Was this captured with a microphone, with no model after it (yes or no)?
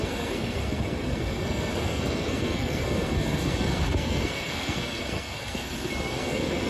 no